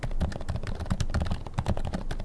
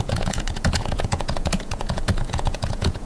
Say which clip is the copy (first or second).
second